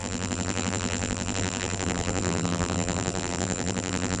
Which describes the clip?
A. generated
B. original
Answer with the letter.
A